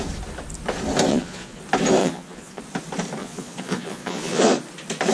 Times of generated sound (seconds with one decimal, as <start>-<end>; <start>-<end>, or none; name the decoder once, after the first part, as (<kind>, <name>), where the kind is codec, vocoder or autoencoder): 1.1-1.6 (vocoder, Vocos); 2.0-2.6; 3.2-4.6